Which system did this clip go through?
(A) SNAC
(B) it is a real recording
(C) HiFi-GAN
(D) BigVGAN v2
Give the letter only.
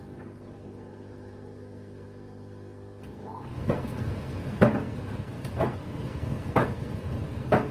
A